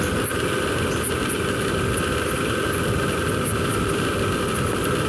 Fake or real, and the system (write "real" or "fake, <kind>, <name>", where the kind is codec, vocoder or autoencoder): real